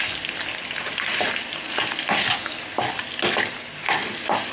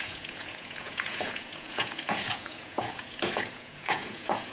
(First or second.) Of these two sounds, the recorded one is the first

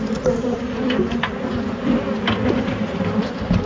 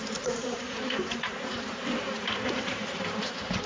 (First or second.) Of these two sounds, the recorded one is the first